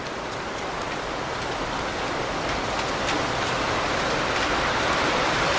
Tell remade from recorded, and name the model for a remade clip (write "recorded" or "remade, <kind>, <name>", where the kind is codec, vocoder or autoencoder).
recorded